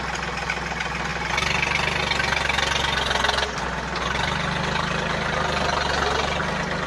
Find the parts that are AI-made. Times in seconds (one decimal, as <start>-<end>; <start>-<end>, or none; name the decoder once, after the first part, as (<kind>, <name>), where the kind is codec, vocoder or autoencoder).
none